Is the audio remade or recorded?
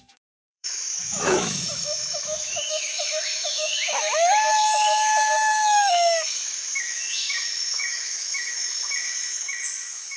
remade